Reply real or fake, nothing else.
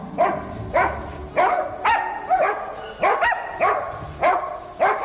real